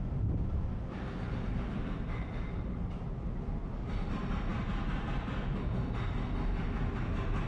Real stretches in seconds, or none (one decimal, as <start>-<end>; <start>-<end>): 0.0-7.5